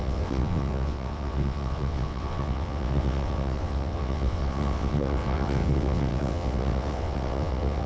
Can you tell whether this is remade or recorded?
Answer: remade